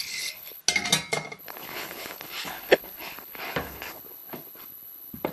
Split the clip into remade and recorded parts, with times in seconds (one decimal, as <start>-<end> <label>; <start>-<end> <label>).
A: 0.0-0.6 remade; 0.6-1.4 recorded; 1.4-5.3 remade